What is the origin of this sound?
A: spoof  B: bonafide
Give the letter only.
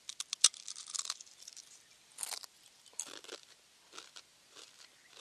B